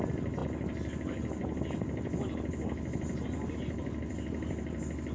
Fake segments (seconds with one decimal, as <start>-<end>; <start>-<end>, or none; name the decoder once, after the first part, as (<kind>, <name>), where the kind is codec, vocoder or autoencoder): none